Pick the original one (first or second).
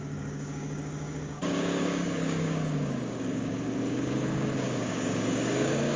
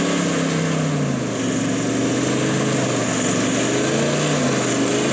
second